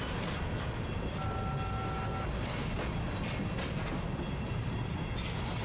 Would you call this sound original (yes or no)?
yes